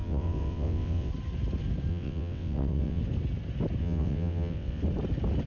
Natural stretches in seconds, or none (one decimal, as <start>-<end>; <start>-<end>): 1.1-1.9; 3.0-3.8; 4.8-5.5